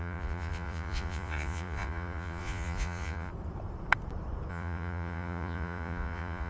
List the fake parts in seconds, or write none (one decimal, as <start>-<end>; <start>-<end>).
0.0-3.3; 4.5-6.5